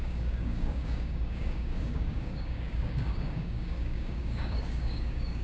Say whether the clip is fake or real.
fake